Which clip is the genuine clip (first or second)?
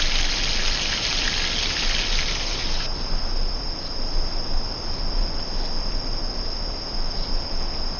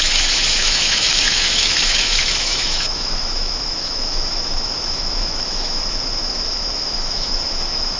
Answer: first